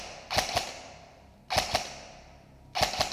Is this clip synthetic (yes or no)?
no